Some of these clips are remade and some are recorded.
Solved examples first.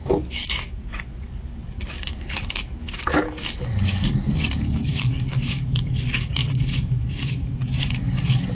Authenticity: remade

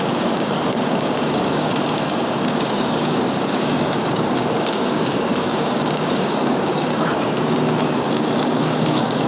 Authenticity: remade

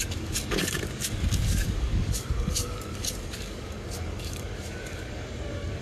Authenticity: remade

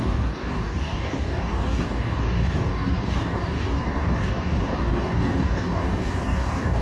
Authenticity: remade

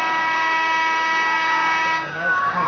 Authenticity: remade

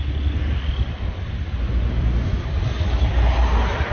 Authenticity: recorded